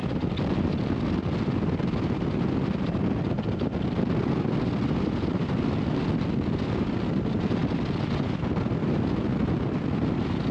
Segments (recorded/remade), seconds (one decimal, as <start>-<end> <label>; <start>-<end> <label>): 0.0-10.5 recorded

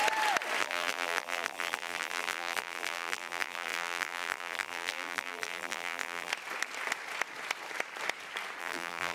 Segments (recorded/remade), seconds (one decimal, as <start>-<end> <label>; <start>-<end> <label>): 0.0-0.6 recorded; 0.6-6.3 remade; 6.3-8.6 recorded; 8.6-9.1 remade

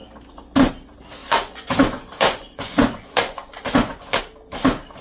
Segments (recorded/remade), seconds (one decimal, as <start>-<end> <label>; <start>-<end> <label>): 0.0-1.2 recorded; 1.2-4.2 remade; 4.2-5.0 recorded

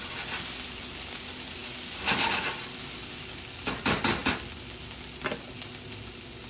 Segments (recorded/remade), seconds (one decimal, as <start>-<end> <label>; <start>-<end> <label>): 0.0-6.5 recorded

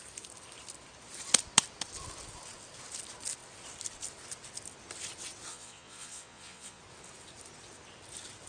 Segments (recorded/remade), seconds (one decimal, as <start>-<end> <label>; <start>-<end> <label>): 0.0-5.5 recorded; 5.5-6.8 remade; 6.8-8.5 recorded

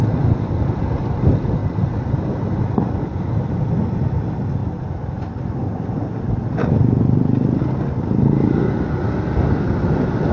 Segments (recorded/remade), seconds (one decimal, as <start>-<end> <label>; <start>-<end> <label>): 0.0-10.3 recorded

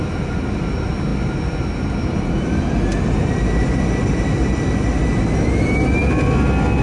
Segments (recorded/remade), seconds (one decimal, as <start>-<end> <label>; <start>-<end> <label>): 0.0-6.8 recorded